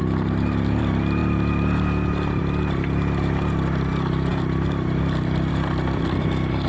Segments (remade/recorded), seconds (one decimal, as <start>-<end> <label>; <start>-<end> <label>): 0.0-6.7 recorded